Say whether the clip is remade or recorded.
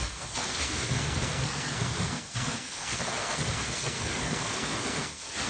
remade